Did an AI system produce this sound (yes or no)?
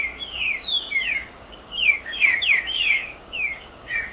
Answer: yes